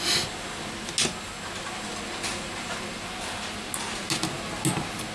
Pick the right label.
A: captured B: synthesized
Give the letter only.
A